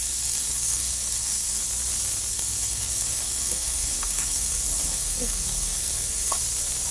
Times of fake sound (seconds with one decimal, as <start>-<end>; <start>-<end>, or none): 0.0-1.6; 2.3-6.4